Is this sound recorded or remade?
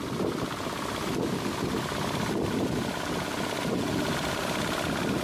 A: recorded